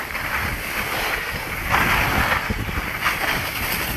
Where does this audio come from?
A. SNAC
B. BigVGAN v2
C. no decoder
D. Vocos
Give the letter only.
C